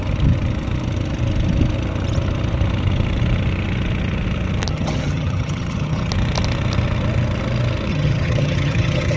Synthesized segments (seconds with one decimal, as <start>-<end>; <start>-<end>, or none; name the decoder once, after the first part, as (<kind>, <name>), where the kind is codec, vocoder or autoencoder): 4.7-6.1 (vocoder, HiFi-GAN); 7.9-9.2